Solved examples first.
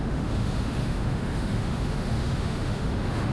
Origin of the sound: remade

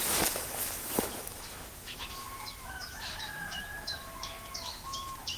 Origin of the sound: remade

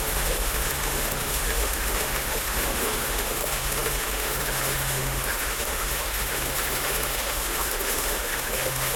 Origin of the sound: remade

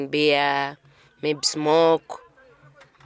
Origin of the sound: recorded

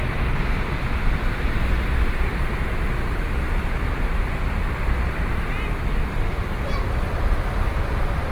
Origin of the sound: recorded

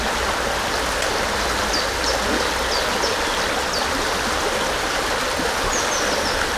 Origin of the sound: recorded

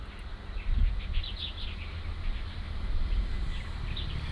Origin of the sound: recorded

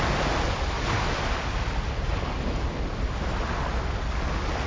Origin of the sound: recorded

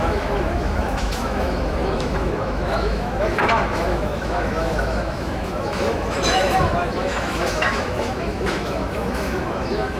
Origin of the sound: remade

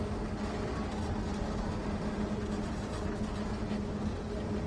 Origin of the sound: recorded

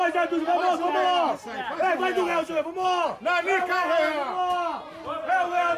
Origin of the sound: recorded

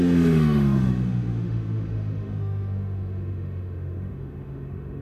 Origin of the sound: remade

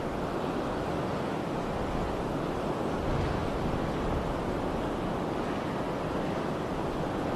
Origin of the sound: recorded